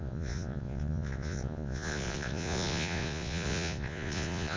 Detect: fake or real fake